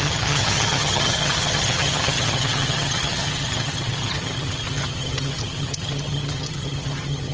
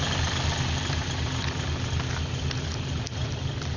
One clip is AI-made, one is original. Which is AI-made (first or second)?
first